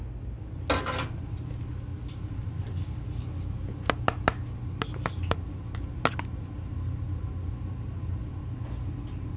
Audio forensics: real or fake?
real